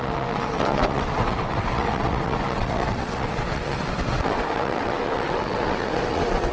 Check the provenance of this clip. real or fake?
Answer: fake